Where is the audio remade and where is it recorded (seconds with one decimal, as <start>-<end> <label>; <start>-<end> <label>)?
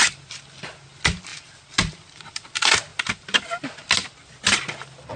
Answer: 0.0-5.2 recorded